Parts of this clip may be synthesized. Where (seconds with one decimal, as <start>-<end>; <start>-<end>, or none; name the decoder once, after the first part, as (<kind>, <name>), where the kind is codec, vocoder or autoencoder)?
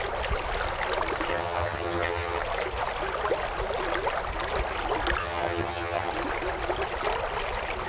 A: 1.3-2.4 (vocoder, HiFi-GAN); 5.2-6.1